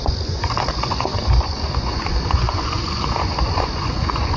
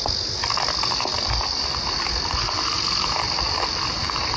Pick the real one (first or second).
second